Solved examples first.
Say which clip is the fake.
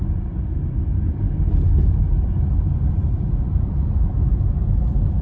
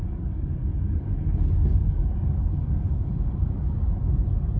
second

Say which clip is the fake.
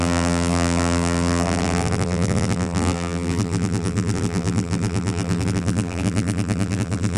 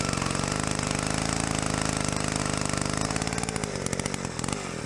first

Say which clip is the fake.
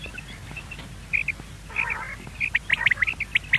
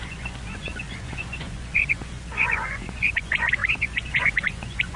second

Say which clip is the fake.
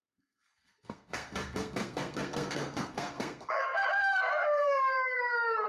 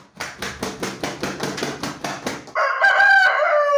first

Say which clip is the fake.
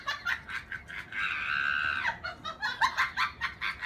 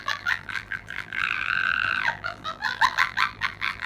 second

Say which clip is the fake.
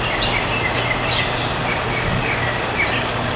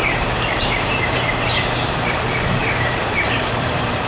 second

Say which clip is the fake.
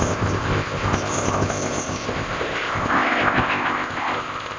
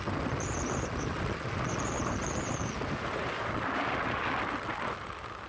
first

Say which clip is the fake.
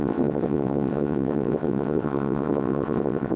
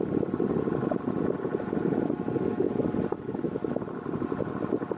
first